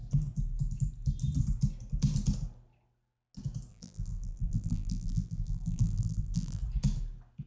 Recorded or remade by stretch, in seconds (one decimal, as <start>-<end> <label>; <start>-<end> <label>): 0.0-3.7 recorded; 3.7-6.6 remade; 6.6-7.5 recorded

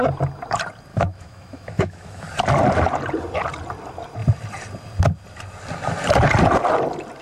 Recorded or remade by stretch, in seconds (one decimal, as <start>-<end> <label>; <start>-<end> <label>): 0.0-0.9 recorded; 0.9-2.2 remade; 2.2-7.2 recorded

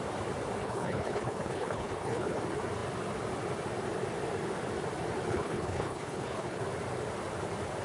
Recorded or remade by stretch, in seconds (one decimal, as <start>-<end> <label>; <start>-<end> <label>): 0.0-0.6 recorded; 0.6-2.4 remade; 2.4-5.3 recorded; 5.3-6.6 remade; 6.6-7.8 recorded